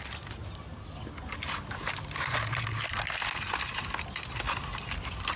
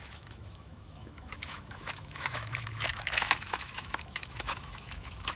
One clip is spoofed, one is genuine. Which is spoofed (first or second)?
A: second